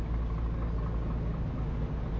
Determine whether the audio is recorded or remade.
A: recorded